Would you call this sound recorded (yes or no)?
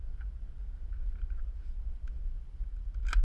yes